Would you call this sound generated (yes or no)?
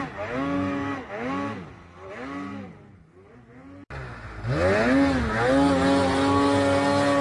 no